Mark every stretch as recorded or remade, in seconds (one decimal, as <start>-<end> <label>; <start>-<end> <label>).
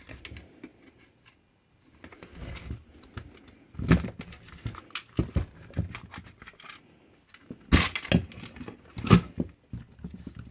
0.0-10.5 recorded